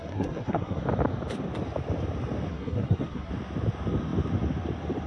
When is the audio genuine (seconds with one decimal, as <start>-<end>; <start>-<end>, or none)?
0.8-2.5; 3.3-5.1